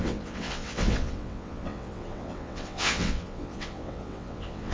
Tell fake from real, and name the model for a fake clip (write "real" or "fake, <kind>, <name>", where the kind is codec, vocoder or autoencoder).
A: fake, vocoder, WaveNeXt